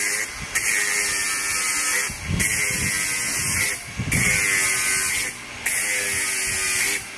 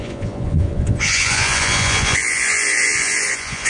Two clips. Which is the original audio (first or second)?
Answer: first